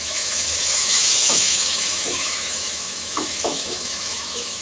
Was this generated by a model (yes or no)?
yes